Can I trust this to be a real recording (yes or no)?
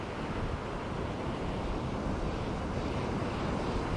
yes